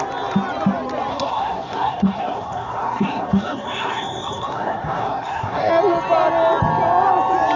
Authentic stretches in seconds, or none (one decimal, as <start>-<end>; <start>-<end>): 0.0-1.1; 5.7-7.6